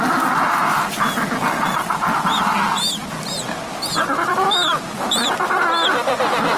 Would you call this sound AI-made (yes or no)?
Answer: no